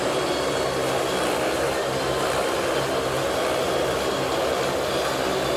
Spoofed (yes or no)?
no